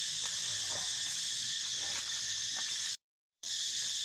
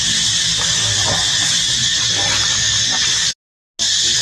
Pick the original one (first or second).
second